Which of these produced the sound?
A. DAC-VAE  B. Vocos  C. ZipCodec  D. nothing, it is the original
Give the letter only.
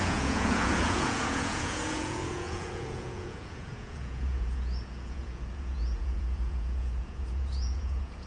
B